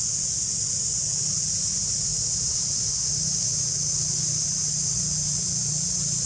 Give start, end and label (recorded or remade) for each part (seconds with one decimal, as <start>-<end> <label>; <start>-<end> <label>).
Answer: 0.0-6.3 recorded